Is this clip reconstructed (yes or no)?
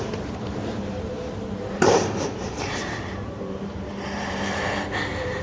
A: yes